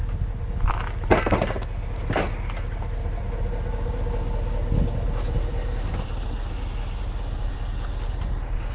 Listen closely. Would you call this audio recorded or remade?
recorded